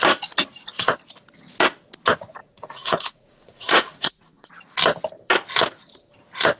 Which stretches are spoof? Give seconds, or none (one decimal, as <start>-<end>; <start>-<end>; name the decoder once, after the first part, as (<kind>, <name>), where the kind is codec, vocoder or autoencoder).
2.4-4.5 (vocoder, Vocos)